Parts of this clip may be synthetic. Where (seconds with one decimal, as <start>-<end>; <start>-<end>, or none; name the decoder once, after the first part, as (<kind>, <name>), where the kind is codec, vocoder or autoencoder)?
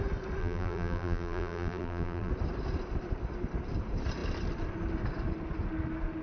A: 0.4-2.3 (vocoder, BigVGAN v2)